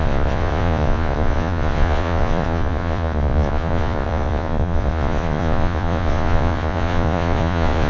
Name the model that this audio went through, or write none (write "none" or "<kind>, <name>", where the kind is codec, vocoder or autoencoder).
vocoder, Vocos